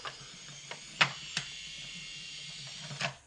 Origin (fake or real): real